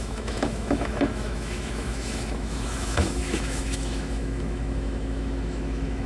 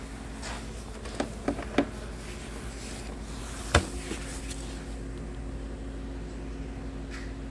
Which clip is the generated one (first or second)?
first